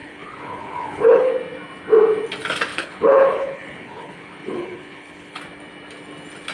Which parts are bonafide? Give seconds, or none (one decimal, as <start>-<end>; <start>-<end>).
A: 1.3-2.7; 5.4-6.5